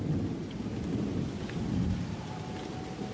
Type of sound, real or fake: real